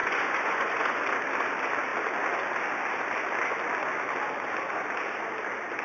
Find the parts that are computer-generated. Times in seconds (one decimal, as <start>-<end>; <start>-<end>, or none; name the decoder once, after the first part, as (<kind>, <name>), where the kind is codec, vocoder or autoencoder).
0.0-1.0 (vocoder, Vocos)